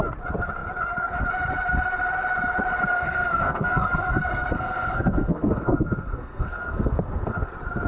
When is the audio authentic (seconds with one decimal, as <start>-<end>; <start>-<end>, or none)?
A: 0.0-2.8; 7.5-7.9